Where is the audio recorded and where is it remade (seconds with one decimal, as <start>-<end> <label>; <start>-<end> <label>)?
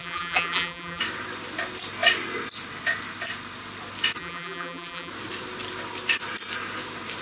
0.0-1.0 remade; 1.0-4.2 recorded; 4.2-5.1 remade; 5.1-7.2 recorded